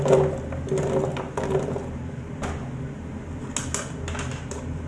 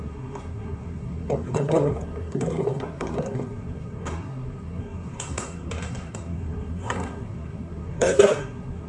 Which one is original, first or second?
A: first